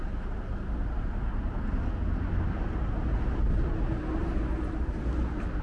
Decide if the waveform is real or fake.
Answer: real